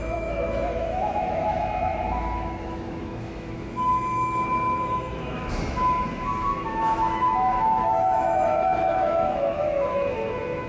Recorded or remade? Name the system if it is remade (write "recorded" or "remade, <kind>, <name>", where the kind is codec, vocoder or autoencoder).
remade, autoencoder, DAC-VAE